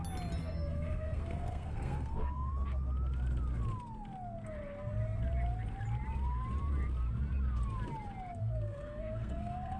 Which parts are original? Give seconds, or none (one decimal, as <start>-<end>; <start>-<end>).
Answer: 0.0-0.4; 2.5-8.4